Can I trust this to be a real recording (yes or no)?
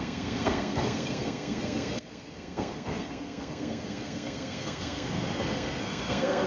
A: no